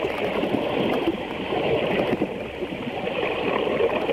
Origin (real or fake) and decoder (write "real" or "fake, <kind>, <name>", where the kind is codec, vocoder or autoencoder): real